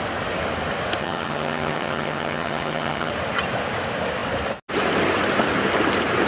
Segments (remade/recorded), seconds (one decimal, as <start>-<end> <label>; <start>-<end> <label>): 0.0-1.0 recorded; 1.0-3.1 remade; 3.1-6.3 recorded